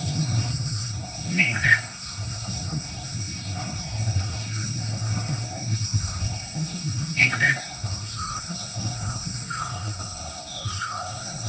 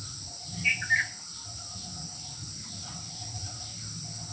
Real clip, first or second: second